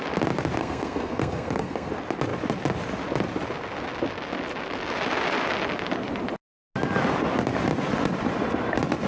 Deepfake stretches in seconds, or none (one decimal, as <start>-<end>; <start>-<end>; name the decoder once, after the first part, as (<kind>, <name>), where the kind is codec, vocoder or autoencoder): 0.6-1.9 (codec, SNAC)